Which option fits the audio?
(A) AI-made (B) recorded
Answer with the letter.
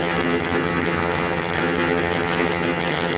A